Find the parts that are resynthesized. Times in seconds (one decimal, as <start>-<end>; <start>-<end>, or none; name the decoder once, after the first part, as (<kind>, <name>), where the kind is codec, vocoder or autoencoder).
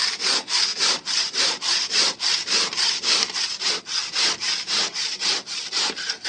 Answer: 0.0-6.3 (vocoder, BigVGAN v2)